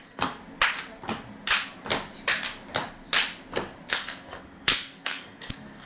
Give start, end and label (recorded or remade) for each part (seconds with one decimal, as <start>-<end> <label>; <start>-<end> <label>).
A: 0.0-0.4 remade; 0.4-3.9 recorded; 3.9-5.9 remade